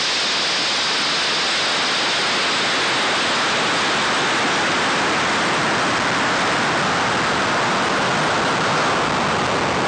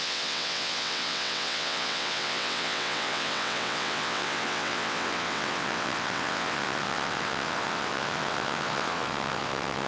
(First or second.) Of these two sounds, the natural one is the first